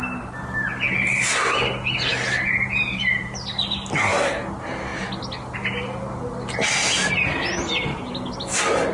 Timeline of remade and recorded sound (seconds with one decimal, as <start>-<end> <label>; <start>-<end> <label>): 0.0-8.9 recorded